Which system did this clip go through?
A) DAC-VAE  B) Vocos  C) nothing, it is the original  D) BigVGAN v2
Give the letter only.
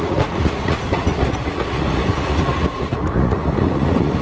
B